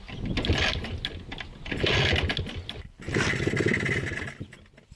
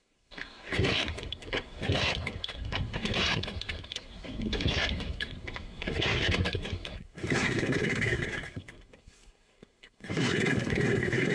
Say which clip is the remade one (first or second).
second